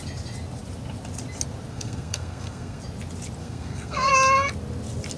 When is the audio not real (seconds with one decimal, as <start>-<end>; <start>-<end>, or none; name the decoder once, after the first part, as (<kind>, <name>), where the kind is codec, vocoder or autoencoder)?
1.7-2.8 (codec, SNAC); 3.4-4.1